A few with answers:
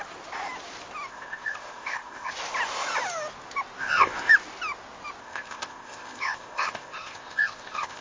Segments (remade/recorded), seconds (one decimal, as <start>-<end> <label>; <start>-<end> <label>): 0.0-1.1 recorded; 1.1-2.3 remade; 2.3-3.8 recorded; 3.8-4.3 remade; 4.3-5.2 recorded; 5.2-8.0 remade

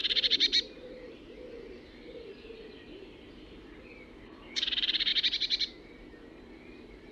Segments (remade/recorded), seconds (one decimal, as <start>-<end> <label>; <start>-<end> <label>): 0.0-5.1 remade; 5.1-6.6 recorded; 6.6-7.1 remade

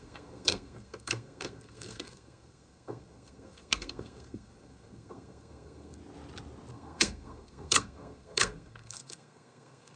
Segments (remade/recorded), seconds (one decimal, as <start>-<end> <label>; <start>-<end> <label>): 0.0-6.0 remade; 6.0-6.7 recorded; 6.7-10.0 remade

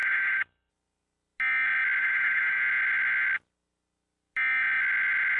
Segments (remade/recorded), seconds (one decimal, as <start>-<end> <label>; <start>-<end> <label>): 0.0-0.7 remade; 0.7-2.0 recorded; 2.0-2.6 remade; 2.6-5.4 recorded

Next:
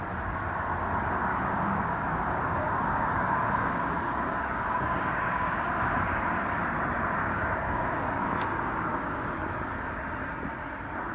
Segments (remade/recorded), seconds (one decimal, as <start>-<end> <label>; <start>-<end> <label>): 0.0-1.3 recorded; 1.3-5.5 remade; 5.5-7.2 recorded; 7.2-9.2 remade; 9.2-11.1 recorded

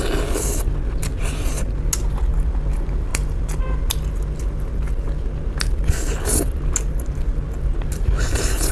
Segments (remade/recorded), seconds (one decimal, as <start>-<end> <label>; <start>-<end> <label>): 0.0-3.1 recorded; 3.1-3.6 remade; 3.6-8.7 recorded